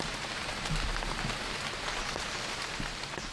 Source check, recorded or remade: recorded